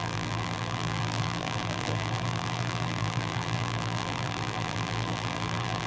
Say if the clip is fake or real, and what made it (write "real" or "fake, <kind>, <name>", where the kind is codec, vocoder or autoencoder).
fake, vocoder, BigVGAN v2